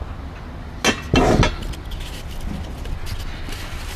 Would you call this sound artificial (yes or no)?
no